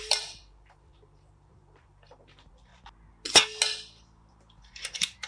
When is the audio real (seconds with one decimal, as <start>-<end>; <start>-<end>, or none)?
2.7-4.3